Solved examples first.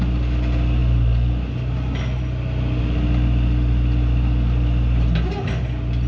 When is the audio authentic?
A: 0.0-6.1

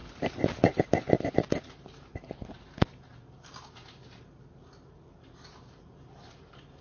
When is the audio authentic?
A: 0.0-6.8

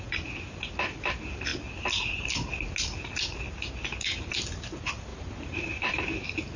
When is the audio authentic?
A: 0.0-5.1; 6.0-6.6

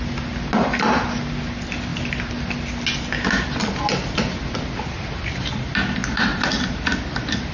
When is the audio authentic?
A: 0.0-7.5